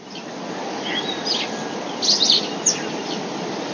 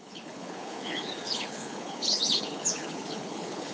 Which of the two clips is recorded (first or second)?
first